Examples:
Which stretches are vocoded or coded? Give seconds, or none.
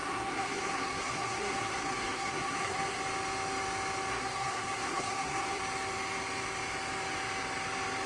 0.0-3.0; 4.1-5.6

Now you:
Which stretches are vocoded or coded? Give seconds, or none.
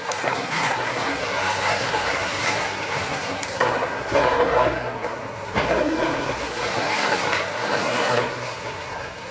0.0-9.3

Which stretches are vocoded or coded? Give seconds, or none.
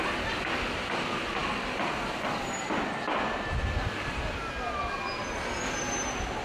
none